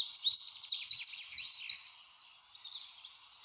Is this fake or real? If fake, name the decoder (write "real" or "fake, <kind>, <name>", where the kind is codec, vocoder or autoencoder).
real